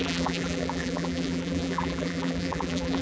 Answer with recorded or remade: remade